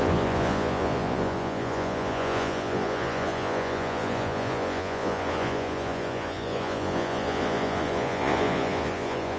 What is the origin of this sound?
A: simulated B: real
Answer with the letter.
A